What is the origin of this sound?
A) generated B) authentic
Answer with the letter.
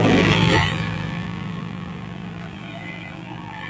A